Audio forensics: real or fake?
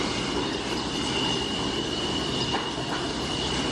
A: fake